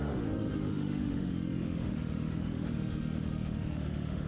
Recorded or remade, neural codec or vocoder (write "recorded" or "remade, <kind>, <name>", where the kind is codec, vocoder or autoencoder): remade, autoencoder, DAC-VAE